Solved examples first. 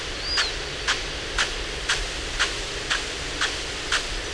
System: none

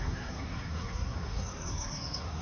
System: codec, SNAC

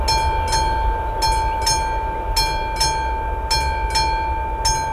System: none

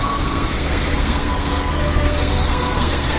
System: codec, SNAC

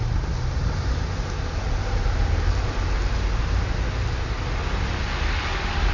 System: none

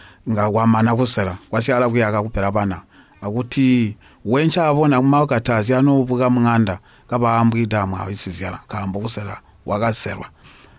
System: none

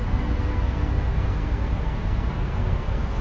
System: codec, SNAC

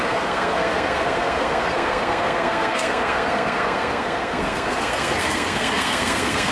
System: codec, SNAC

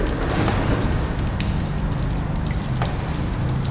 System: none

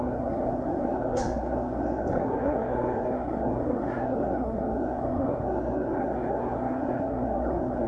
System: codec, SNAC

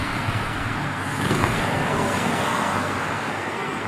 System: codec, SNAC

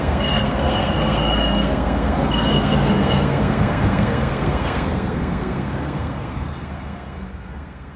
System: codec, SNAC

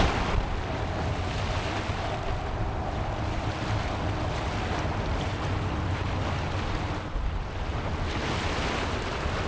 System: none